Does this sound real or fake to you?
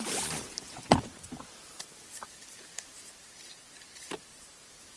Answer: fake